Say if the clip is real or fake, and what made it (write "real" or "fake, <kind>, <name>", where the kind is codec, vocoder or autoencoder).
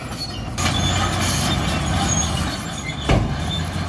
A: real